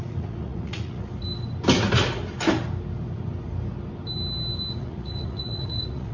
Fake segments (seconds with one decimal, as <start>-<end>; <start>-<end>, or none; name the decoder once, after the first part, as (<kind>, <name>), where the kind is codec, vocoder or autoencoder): 0.0-1.1 (vocoder, Vocos); 4.8-6.1